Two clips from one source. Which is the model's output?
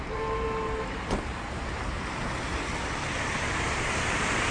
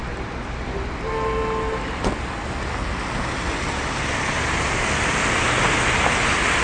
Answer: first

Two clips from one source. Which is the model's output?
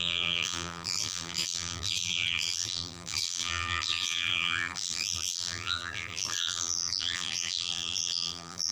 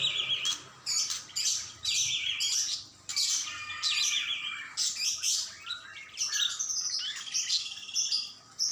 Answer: first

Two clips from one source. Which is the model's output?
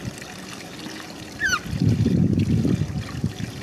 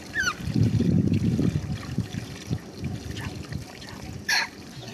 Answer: second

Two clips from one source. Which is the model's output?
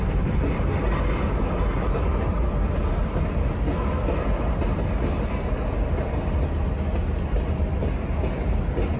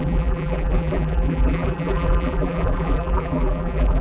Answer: second